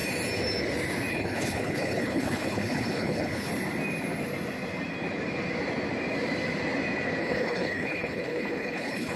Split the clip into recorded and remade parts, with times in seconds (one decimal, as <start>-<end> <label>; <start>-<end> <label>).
0.0-1.1 recorded; 1.1-3.5 remade; 3.5-7.2 recorded; 7.2-9.2 remade